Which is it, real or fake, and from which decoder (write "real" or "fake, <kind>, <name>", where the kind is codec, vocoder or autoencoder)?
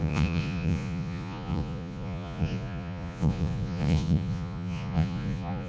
fake, vocoder, Vocos